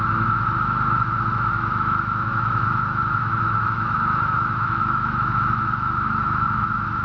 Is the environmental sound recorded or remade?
remade